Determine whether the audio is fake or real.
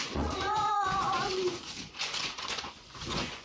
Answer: fake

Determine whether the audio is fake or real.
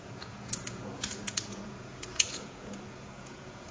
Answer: fake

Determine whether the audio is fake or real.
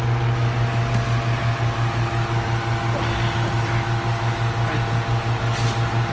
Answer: real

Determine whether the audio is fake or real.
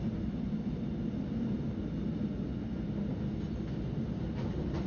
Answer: real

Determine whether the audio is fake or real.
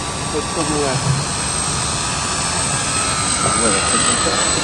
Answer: real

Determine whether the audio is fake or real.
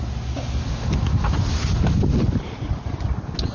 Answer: real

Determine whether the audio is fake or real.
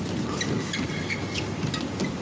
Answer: real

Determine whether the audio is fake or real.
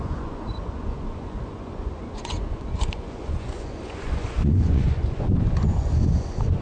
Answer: fake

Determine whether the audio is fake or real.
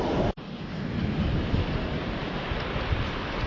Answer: real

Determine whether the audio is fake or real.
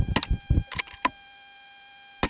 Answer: real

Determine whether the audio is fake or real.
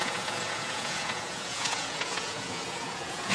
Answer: fake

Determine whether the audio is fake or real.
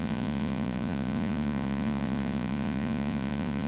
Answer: fake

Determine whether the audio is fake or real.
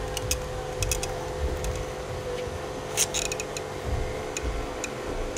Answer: real